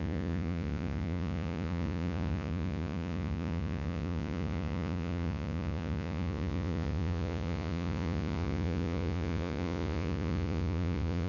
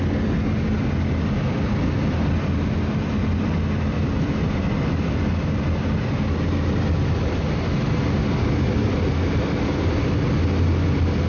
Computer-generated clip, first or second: first